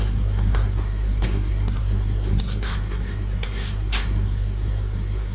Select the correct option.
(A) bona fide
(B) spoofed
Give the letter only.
B